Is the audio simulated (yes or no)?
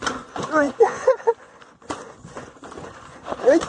yes